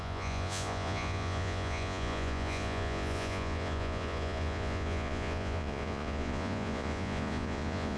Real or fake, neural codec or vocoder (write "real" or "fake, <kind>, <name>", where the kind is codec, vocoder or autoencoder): fake, vocoder, Vocos